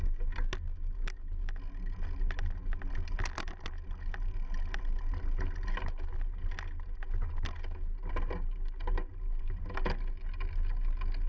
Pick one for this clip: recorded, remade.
recorded